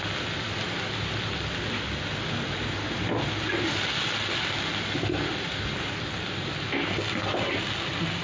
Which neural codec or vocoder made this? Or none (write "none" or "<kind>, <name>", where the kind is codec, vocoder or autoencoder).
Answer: none